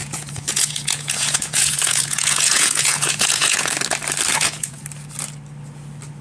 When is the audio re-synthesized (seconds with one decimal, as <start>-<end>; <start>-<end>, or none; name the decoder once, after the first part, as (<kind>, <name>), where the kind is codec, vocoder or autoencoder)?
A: 0.0-3.7 (vocoder, Vocos); 4.3-4.8